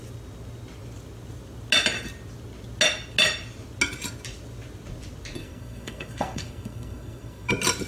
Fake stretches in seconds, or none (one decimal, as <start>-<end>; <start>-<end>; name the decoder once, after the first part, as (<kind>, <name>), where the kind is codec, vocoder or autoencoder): 5.4-7.5 (codec, SNAC)